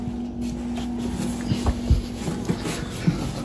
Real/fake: real